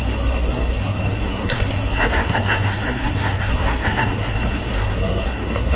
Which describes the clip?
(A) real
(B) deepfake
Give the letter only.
B